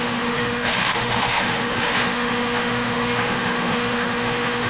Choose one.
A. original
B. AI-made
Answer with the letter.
B